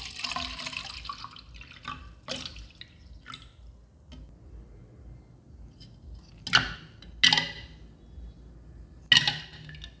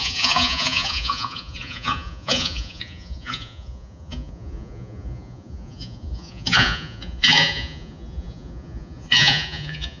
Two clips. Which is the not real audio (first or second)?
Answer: second